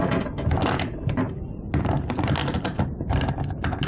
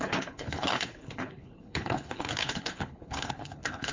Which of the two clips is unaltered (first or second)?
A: first